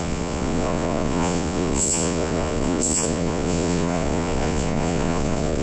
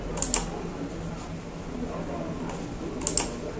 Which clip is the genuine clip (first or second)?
second